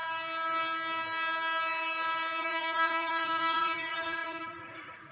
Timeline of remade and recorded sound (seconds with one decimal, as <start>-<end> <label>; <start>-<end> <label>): 0.0-2.4 recorded; 2.4-5.1 remade